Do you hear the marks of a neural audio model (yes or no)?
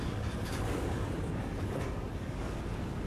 yes